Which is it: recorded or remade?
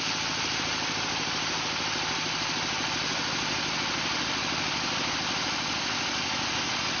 recorded